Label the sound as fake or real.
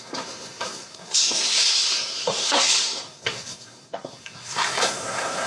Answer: fake